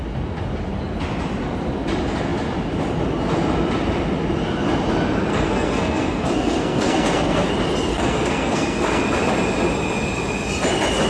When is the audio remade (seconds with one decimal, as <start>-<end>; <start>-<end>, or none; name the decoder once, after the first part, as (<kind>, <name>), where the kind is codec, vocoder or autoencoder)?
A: 5.3-7.5 (codec, SNAC); 7.9-9.0

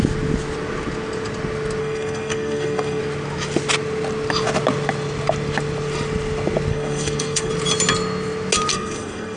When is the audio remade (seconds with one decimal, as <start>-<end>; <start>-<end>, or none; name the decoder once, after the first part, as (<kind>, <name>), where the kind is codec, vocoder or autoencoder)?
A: 1.8-3.0 (codec, SNAC); 6.7-7.5; 8.7-9.4

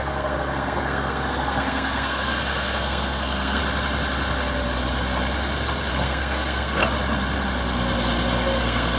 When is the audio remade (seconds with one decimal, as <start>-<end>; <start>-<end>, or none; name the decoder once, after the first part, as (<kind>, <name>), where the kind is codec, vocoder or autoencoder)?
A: 0.0-3.6 (codec, SNAC); 5.9-6.8; 8.6-9.0

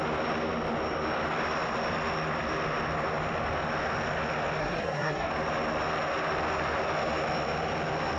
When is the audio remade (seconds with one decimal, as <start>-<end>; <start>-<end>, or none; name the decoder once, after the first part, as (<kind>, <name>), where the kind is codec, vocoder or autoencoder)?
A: 4.6-5.3 (codec, SNAC)

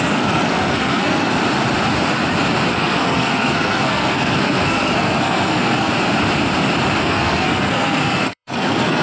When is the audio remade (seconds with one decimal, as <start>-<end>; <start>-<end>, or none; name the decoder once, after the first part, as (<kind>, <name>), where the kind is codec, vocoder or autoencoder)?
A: 0.0-1.3 (codec, SNAC); 2.7-5.9; 7.0-9.0

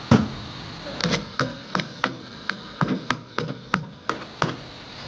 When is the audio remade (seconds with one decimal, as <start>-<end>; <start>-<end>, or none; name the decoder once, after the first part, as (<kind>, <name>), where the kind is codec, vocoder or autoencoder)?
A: 1.0-4.1 (codec, SNAC)